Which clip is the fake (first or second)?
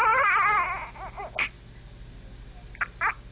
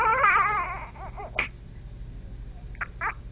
second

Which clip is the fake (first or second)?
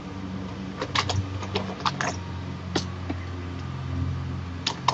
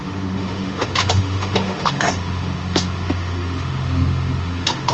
second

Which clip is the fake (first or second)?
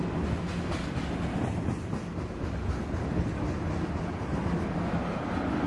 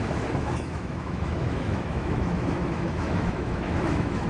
second